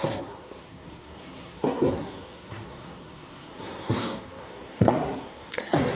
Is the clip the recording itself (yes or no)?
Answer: no